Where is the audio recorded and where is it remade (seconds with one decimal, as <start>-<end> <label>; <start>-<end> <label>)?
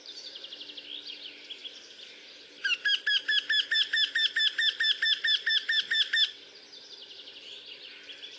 0.0-8.4 recorded